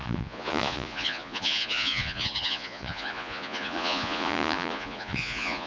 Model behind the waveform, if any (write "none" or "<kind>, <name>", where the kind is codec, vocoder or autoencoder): vocoder, Vocos